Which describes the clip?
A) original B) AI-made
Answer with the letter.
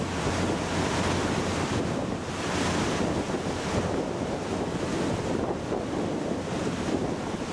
A